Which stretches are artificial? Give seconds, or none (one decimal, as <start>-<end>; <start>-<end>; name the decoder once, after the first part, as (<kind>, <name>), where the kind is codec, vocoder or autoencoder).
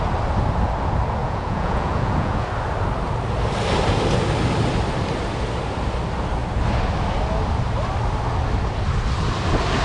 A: 1.2-2.5 (vocoder, Vocos)